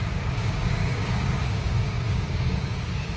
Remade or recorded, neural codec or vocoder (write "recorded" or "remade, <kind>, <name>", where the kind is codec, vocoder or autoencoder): remade, codec, DAC